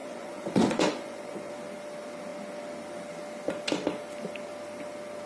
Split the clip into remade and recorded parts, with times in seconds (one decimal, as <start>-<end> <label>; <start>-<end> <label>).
0.0-1.5 remade; 1.5-5.3 recorded